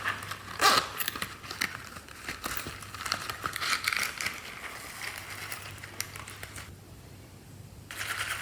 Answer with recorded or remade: recorded